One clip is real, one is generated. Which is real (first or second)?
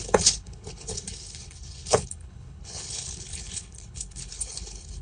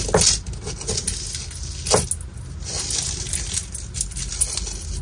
second